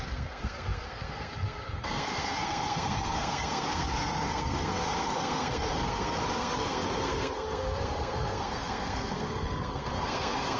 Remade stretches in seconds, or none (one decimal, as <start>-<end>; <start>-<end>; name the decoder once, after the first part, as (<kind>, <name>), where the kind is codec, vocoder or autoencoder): 0.0-10.6 (codec, SNAC)